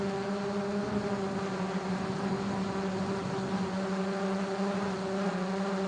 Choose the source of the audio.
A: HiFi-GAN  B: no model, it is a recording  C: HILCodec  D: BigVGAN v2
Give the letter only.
B